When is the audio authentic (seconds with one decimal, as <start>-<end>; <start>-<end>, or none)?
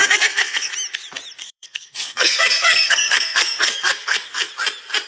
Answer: 0.7-1.4; 4.5-5.1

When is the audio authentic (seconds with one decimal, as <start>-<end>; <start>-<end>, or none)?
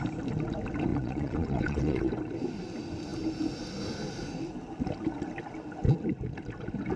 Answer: 0.0-0.9; 2.1-7.0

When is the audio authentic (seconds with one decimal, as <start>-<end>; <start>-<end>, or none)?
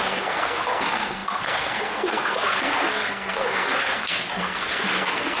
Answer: none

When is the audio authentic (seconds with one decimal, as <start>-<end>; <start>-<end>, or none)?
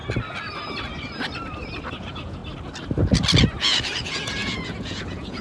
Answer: 0.0-1.9; 2.4-3.6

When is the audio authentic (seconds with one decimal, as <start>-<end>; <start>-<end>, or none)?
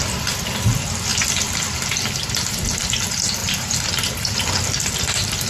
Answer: 0.0-3.4; 3.9-5.5